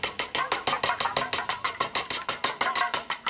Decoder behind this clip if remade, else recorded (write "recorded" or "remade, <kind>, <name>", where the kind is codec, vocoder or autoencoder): recorded